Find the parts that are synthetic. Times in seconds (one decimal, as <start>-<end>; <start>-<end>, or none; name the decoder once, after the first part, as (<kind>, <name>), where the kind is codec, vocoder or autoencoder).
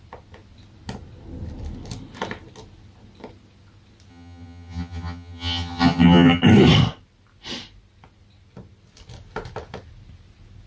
4.1-6.4 (vocoder, HiFi-GAN)